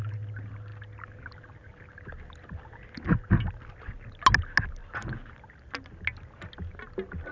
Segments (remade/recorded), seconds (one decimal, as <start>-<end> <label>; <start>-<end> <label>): 0.0-7.3 recorded